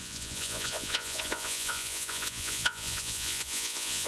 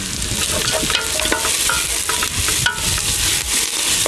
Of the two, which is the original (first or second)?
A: second